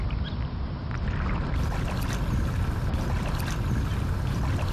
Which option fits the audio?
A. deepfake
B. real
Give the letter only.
B